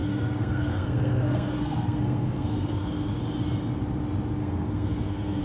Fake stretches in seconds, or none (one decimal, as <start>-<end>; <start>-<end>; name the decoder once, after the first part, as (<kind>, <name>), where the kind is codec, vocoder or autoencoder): 0.0-3.2 (codec, SNAC); 4.4-5.4